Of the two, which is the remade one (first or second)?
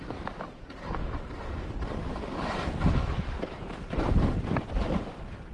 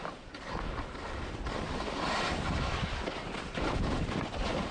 second